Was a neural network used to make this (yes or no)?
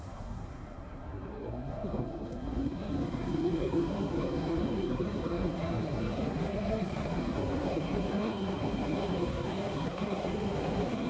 yes